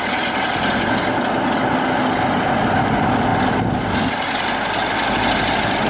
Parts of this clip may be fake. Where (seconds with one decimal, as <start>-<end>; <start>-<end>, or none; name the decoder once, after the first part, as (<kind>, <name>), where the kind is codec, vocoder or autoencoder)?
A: none